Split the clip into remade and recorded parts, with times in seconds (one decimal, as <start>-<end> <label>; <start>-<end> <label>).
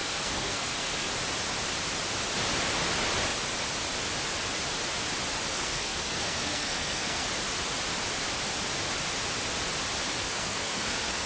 0.0-1.1 remade; 1.1-5.5 recorded; 5.5-7.3 remade; 7.3-10.2 recorded; 10.2-11.3 remade